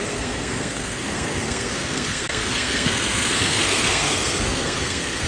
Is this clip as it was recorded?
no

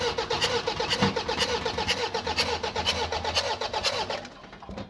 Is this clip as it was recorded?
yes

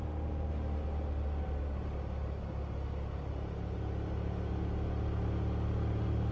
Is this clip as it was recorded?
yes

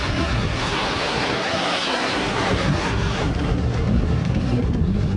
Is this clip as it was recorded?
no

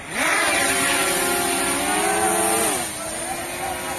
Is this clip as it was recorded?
yes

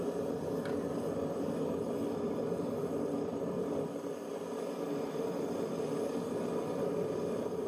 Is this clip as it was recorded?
yes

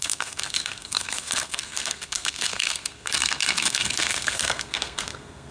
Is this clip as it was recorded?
no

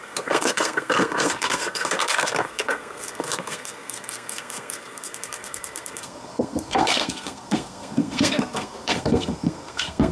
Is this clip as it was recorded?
no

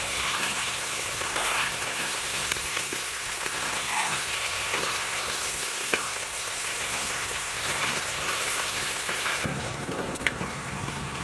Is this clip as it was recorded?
no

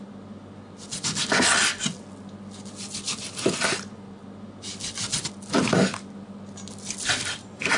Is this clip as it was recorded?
yes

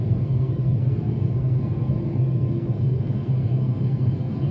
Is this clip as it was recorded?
no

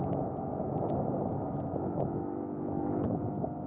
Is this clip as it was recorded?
yes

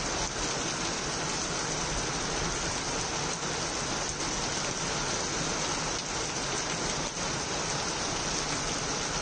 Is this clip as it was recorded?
yes